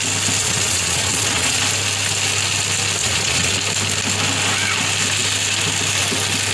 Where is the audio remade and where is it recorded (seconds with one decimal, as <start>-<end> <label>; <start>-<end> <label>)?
0.0-0.4 recorded; 0.4-1.6 remade; 1.6-3.0 recorded; 3.0-3.6 remade; 3.6-6.5 recorded